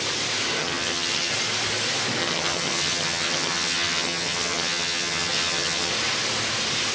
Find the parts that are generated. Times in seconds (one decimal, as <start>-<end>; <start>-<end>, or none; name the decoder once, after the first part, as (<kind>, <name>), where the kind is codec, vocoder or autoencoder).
0.6-1.3 (vocoder, HiFi-GAN); 2.2-5.9